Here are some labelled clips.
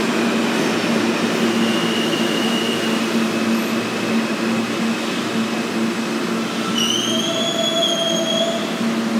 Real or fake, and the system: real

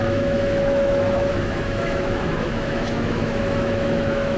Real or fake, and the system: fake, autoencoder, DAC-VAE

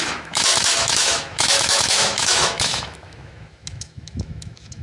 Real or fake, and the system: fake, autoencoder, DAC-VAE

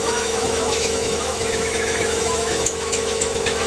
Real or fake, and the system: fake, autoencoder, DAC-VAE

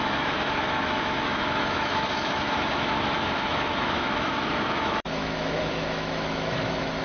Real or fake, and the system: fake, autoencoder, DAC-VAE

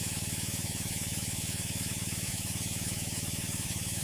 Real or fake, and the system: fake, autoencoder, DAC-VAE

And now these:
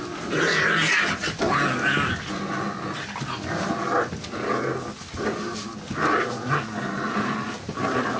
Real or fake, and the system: real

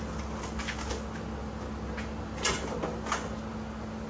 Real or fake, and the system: real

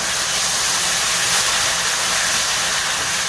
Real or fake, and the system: real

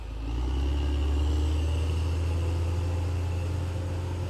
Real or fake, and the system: real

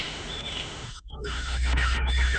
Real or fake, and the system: fake, autoencoder, DAC-VAE